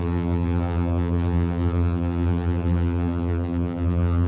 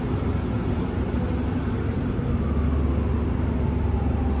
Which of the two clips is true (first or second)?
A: second